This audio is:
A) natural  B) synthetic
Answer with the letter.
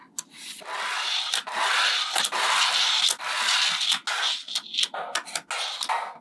A